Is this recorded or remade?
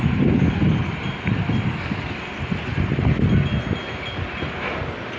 recorded